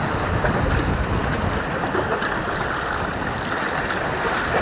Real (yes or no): yes